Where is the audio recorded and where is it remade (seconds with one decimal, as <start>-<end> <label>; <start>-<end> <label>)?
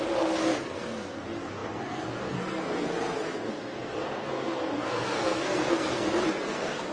0.0-6.9 remade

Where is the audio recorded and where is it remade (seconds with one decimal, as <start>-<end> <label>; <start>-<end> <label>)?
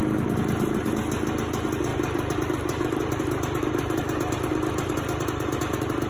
0.0-0.9 remade; 0.9-1.9 recorded; 1.9-5.6 remade; 5.6-6.1 recorded